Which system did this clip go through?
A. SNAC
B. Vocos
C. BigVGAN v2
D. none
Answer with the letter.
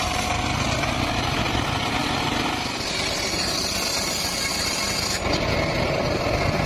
D